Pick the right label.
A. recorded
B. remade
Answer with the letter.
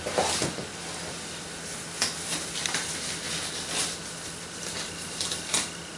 A